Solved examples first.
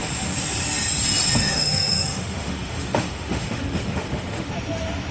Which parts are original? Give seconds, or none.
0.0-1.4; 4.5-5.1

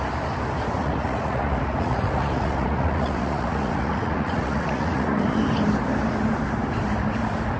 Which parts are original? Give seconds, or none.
0.0-0.8; 5.4-7.6

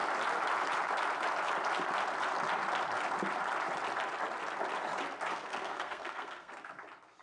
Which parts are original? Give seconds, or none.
0.0-5.3; 6.8-7.2

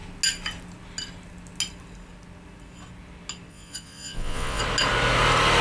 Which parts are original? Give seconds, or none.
0.0-3.5; 4.6-5.6

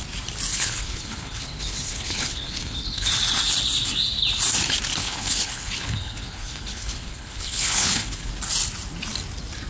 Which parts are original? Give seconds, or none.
0.0-0.5; 3.1-5.0; 8.3-9.7

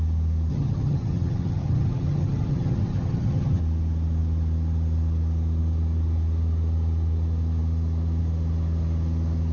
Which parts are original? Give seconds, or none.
0.0-0.5; 3.6-9.5

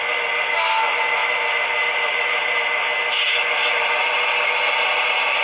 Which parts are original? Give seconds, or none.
0.0-1.2; 2.5-5.4